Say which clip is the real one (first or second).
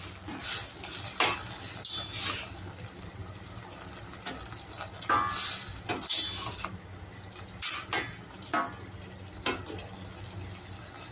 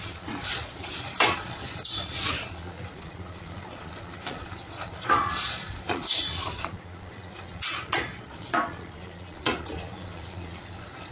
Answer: first